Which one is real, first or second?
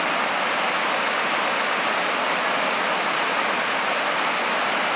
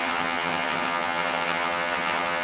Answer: first